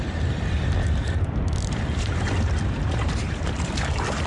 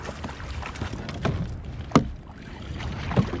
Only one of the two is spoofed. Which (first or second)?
first